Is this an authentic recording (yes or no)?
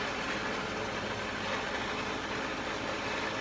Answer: yes